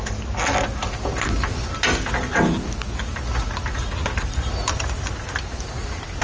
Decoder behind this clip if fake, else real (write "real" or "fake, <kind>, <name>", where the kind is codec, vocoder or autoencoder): real